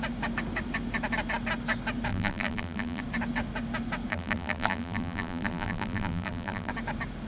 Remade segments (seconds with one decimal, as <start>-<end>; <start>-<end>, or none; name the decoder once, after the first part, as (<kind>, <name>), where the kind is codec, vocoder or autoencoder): 2.1-3.0 (vocoder, BigVGAN v2); 4.1-6.7